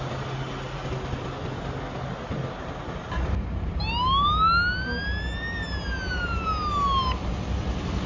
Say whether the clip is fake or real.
real